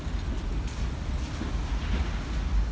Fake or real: real